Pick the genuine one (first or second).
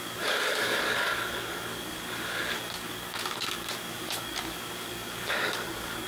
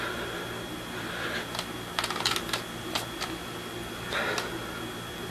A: second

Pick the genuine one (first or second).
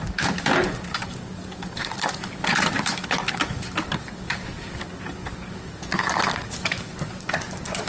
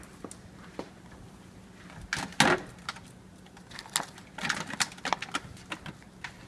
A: second